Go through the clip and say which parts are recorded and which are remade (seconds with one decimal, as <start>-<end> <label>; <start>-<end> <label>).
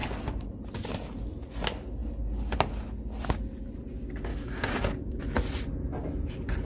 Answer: 0.0-4.3 recorded; 4.3-5.2 remade; 5.2-6.6 recorded